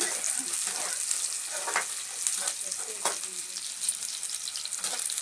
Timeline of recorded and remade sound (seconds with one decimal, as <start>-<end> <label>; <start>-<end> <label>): 0.0-5.2 recorded